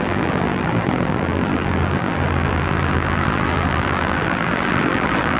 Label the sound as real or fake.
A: fake